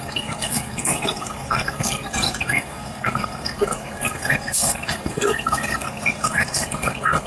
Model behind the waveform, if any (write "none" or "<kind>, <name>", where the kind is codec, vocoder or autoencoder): codec, SNAC